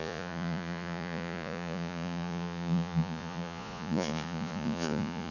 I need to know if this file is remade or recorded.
remade